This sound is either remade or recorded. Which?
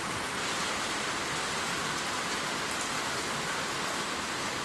recorded